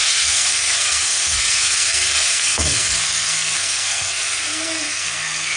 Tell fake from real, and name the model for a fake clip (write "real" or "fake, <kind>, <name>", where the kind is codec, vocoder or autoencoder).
fake, codec, SNAC